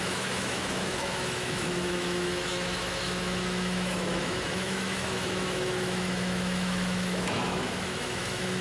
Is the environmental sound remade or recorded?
remade